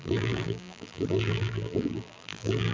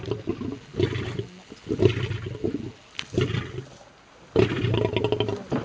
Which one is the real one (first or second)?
second